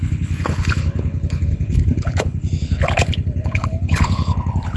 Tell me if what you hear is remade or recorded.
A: remade